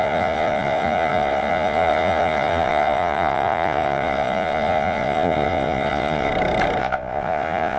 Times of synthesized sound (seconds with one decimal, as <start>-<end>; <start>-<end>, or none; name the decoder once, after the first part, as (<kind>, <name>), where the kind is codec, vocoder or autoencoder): 0.0-6.3 (vocoder, Vocos); 6.8-7.8

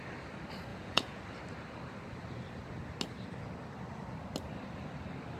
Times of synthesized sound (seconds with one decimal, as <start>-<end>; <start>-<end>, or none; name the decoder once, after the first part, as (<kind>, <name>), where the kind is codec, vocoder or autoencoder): 0.7-1.2 (vocoder, Vocos)

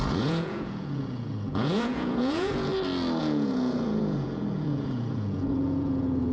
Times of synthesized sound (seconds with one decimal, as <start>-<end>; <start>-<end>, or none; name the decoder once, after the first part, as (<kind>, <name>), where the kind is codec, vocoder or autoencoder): 0.0-2.7 (vocoder, Vocos); 3.2-6.3

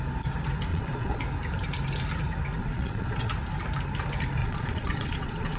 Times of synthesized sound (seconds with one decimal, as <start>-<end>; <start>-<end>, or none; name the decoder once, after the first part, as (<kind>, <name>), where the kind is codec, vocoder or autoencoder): 0.7-1.2 (vocoder, Vocos); 2.6-3.3; 4.4-5.6

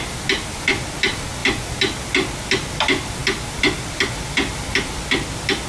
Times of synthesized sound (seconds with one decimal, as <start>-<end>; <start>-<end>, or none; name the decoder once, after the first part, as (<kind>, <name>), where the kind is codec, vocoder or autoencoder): none

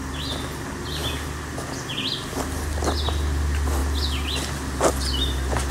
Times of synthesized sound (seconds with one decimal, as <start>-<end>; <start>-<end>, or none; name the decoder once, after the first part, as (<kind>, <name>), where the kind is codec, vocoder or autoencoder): none